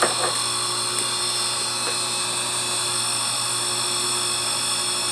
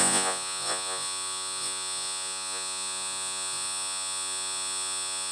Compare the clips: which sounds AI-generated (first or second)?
second